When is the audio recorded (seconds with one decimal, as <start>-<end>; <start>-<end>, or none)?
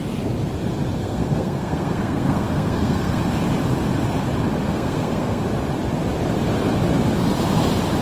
0.0-1.0; 3.2-4.7; 5.4-8.0